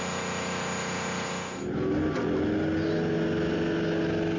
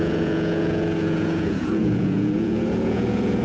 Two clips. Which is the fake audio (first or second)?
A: second